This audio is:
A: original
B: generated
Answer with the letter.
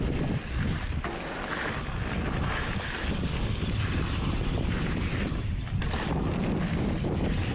B